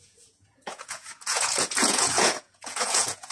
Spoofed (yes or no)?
yes